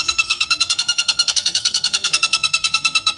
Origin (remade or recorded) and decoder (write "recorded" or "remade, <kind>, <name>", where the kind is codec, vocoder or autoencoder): remade, codec, SNAC